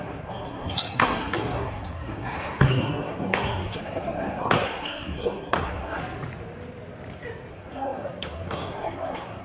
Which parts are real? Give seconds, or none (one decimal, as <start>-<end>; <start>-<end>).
6.0-7.5